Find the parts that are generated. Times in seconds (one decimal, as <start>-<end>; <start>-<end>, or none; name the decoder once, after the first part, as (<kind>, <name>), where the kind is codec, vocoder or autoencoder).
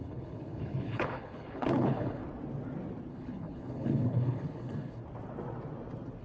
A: 0.0-2.2 (codec, HILCodec); 3.1-5.0